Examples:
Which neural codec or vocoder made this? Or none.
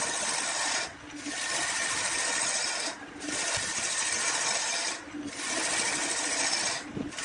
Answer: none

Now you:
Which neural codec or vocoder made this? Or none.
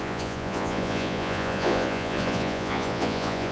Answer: vocoder, Vocos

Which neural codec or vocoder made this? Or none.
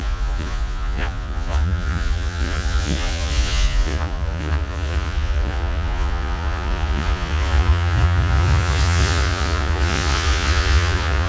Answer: vocoder, Vocos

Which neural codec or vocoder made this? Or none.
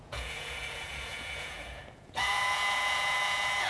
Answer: vocoder, Vocos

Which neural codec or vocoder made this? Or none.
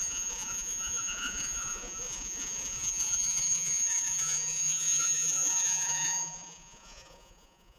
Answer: vocoder, Vocos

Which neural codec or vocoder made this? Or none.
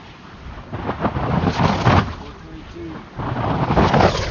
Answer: none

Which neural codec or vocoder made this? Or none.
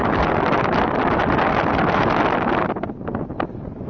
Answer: none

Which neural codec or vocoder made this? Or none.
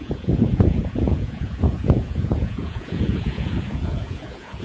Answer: vocoder, Vocos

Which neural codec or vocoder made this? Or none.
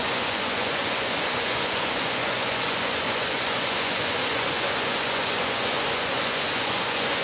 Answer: vocoder, Vocos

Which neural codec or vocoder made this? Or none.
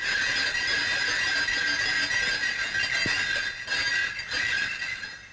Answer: none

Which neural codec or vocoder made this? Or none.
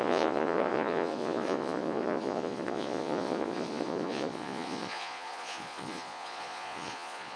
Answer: vocoder, Vocos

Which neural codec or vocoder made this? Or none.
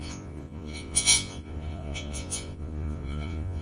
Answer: vocoder, Vocos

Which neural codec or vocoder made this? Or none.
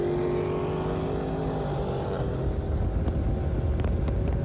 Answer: none